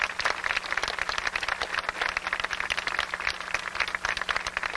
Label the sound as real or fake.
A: real